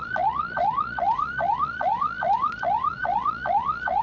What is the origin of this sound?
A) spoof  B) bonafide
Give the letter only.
A